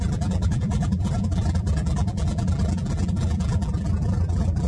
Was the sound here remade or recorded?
remade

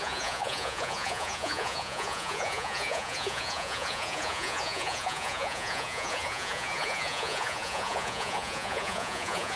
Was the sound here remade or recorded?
remade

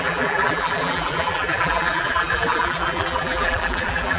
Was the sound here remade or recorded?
remade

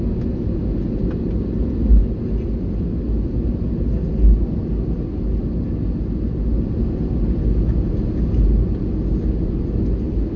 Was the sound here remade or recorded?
recorded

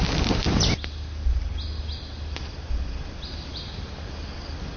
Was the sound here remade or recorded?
recorded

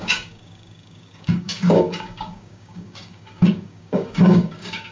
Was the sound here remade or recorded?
remade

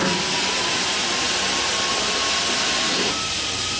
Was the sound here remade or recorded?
recorded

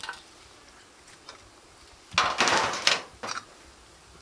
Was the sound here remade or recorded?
recorded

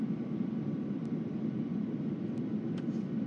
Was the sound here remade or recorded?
remade